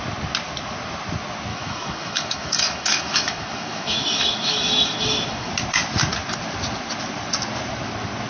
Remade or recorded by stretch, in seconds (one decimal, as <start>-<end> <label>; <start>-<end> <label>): 0.0-1.5 recorded; 1.5-5.5 remade; 5.5-8.3 recorded